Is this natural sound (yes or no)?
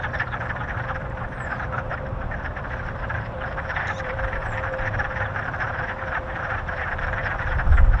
no